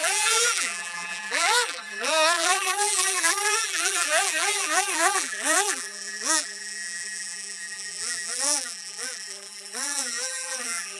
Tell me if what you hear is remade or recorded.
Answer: remade